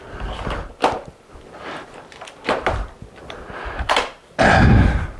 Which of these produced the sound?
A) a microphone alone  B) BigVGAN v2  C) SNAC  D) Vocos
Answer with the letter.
A